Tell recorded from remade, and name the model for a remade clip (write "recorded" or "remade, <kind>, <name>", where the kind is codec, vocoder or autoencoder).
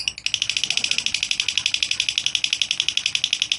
recorded